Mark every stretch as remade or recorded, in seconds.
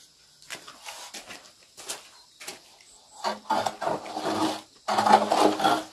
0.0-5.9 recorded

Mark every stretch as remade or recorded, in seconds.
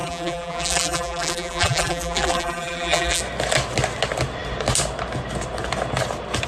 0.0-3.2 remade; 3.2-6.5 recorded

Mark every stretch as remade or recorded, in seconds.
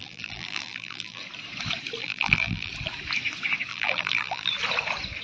0.0-1.2 remade; 1.2-2.0 recorded; 2.0-2.7 remade; 2.7-3.7 recorded; 3.7-4.5 remade; 4.5-5.2 recorded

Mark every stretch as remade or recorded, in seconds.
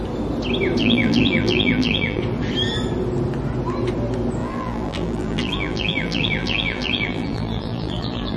0.0-0.8 recorded; 0.8-2.2 remade; 2.2-4.4 recorded; 4.4-8.4 remade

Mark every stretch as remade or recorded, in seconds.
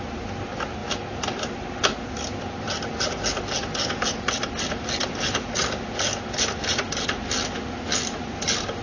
0.0-8.8 recorded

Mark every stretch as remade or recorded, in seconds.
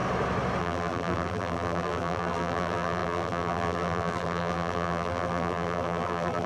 0.0-0.6 recorded; 0.6-6.5 remade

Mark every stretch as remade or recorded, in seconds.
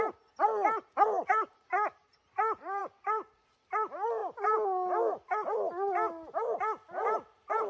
0.0-7.7 recorded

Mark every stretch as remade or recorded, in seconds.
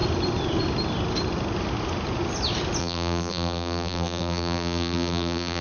0.0-2.8 recorded; 2.8-5.6 remade